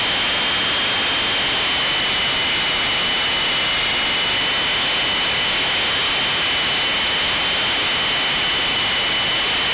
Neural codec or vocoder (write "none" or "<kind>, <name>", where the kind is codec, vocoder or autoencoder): none